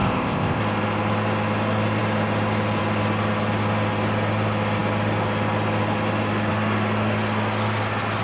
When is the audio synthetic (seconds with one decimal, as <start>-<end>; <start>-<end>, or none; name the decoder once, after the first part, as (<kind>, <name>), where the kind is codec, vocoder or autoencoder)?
0.0-0.6 (codec, ZipCodec)